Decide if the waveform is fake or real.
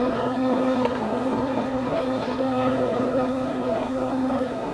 fake